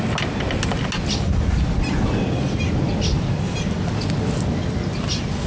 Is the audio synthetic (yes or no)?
no